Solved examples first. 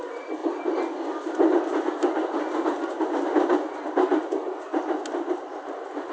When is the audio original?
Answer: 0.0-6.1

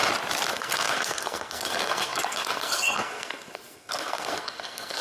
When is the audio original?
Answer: 0.0-0.5

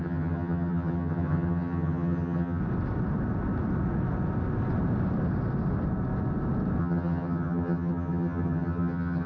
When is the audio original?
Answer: 2.6-6.8

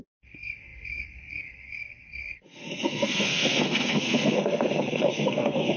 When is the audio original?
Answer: none

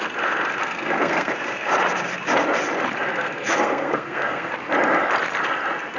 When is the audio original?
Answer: 0.0-0.6; 1.3-3.1; 4.5-6.0

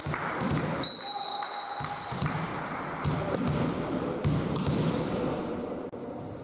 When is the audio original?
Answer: 0.0-6.4

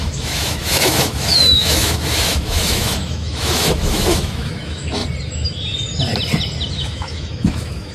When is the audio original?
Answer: 5.0-6.7